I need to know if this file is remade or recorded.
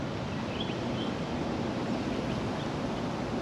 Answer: recorded